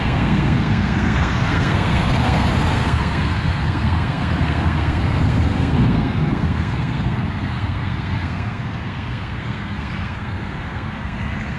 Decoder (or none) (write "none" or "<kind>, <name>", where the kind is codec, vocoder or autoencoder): codec, SNAC